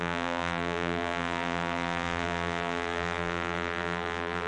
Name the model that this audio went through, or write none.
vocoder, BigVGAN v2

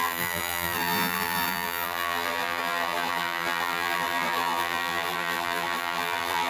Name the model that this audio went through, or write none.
vocoder, BigVGAN v2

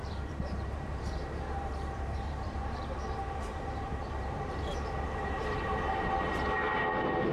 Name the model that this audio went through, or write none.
vocoder, BigVGAN v2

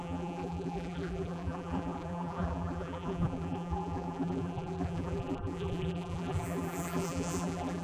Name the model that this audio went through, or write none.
vocoder, BigVGAN v2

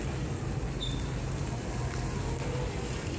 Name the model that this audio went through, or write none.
none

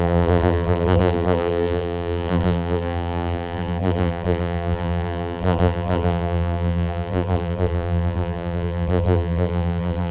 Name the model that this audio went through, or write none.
vocoder, BigVGAN v2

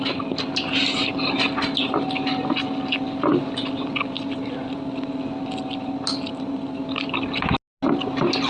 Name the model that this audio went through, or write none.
none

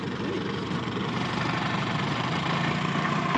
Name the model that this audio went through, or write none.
vocoder, BigVGAN v2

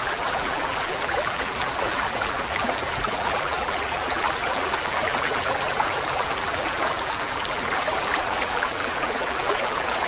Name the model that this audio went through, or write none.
vocoder, BigVGAN v2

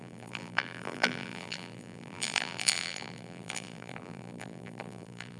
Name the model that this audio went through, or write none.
vocoder, BigVGAN v2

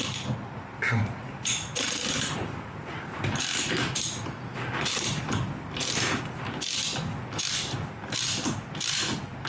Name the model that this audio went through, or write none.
none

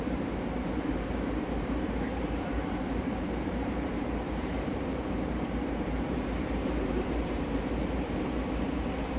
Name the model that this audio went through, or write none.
vocoder, BigVGAN v2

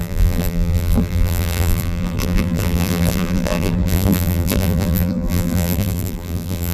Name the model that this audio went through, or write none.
vocoder, BigVGAN v2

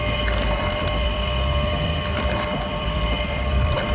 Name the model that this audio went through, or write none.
vocoder, BigVGAN v2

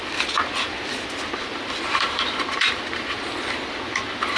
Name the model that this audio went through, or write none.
vocoder, BigVGAN v2